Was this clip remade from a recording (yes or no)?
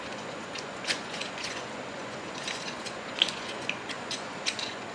yes